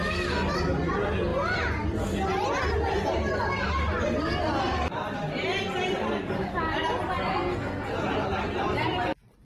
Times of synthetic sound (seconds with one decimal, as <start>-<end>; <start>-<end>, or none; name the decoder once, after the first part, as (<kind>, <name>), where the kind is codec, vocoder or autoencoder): 7.3-7.9 (codec, SNAC)